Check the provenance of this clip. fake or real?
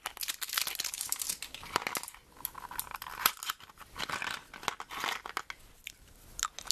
real